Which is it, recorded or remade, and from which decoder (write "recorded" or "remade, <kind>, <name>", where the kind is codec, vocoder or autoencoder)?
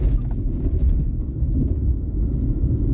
remade, vocoder, Vocos